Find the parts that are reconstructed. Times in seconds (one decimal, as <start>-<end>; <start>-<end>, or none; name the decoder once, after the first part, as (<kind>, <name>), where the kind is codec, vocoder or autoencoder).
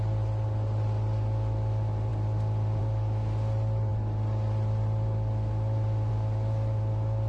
none